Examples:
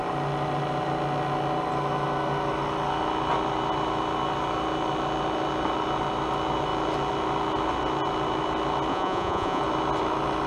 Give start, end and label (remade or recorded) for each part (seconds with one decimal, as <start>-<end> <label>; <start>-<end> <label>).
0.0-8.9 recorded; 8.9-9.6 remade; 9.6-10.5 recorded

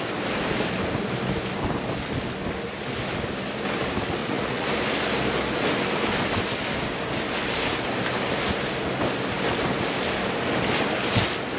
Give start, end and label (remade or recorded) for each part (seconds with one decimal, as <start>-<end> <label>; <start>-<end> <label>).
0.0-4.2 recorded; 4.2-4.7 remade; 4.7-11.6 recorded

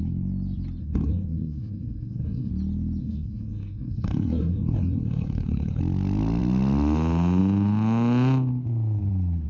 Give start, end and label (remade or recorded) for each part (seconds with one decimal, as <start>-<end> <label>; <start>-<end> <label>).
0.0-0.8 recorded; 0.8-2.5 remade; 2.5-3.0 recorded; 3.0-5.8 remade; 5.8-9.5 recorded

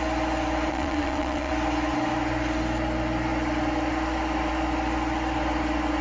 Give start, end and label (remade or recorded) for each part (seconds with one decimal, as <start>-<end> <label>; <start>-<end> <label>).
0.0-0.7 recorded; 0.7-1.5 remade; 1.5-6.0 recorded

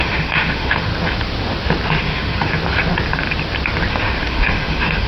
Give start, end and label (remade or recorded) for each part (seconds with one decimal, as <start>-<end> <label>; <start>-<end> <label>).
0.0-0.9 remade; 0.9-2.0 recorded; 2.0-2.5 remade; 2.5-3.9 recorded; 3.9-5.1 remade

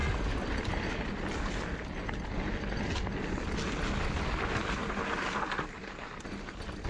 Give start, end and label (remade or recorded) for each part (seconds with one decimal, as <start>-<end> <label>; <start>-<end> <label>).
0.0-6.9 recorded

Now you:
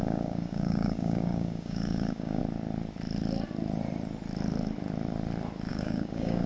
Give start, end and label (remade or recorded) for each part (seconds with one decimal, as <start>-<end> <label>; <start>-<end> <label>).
0.0-2.4 remade; 2.4-5.7 recorded; 5.7-6.5 remade

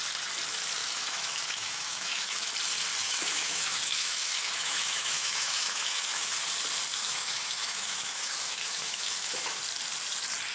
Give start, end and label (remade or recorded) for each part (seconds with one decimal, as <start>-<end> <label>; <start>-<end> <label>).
0.0-0.8 recorded; 0.8-2.5 remade; 2.5-3.0 recorded; 3.0-6.3 remade; 6.3-6.9 recorded; 6.9-9.6 remade; 9.6-10.5 recorded